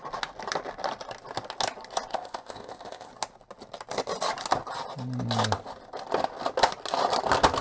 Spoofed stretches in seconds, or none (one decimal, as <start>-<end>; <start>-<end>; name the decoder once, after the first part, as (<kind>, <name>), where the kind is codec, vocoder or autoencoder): 2.1-3.1 (codec, ZipCodec)